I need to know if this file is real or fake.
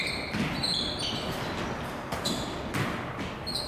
real